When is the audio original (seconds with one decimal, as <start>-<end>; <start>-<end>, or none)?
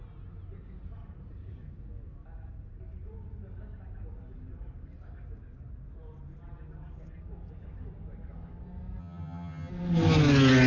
0.0-9.0; 9.7-10.7